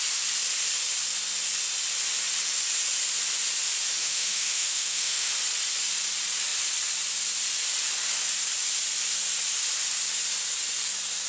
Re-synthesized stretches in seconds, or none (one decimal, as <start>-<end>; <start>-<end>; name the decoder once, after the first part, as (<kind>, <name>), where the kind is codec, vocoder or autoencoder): 4.0-5.3 (autoencoder, DAC-VAE)